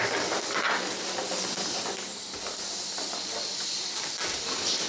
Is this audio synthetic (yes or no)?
no